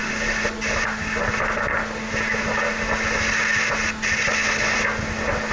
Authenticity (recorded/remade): recorded